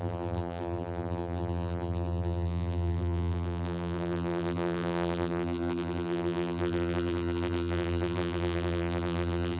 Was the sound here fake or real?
fake